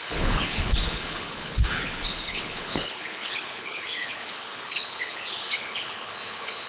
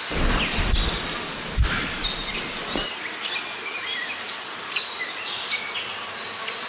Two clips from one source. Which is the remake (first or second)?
first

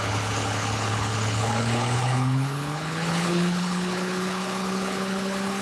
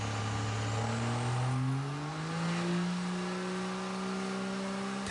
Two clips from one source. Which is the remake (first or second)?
first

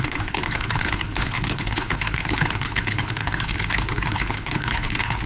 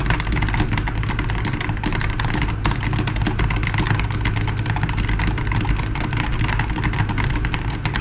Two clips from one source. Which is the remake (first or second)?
first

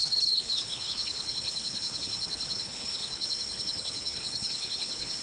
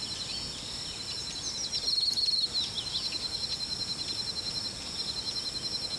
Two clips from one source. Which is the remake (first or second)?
first